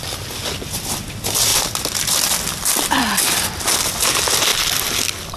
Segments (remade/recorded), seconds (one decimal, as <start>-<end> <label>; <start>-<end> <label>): 0.0-5.4 recorded